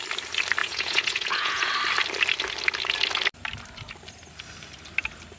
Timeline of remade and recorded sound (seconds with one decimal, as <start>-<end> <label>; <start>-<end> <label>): 0.0-0.6 recorded; 0.6-1.7 remade; 1.7-5.4 recorded